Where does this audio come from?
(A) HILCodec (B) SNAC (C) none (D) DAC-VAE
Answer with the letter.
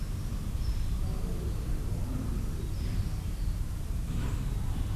C